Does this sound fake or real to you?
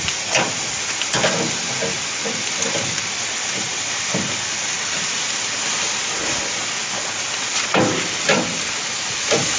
real